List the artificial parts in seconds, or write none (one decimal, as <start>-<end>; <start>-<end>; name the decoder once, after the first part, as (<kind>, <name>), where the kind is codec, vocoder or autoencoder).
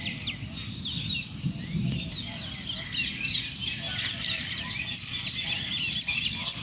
none